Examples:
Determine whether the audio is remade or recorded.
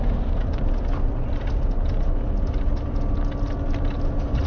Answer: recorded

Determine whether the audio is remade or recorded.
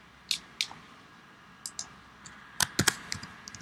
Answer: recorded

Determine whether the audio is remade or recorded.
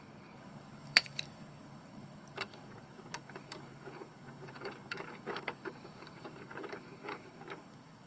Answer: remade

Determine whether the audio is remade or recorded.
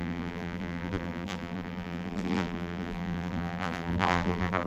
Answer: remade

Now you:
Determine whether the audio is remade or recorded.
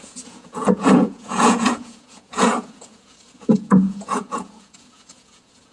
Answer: remade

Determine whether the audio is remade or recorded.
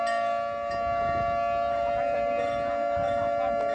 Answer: recorded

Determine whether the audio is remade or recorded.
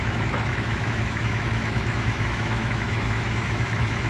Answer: remade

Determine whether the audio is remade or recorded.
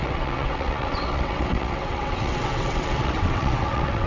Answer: remade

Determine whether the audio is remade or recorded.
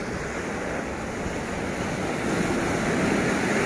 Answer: recorded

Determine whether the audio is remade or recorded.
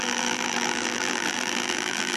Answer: remade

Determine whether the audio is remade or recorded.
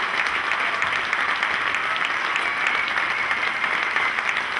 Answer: recorded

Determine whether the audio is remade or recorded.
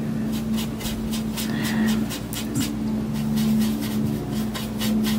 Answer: recorded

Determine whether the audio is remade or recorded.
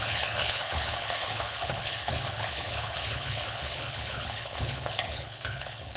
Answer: remade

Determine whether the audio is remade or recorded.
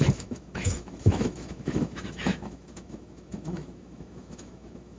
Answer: remade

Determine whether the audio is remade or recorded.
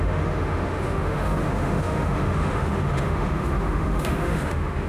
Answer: remade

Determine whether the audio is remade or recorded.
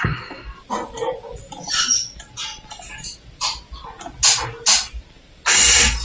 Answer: recorded